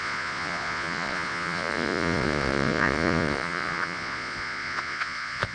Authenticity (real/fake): fake